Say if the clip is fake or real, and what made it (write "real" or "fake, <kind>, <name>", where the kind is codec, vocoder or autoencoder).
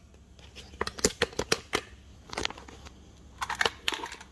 real